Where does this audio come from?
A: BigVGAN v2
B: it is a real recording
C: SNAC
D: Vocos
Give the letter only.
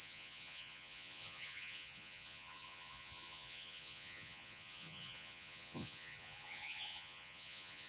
D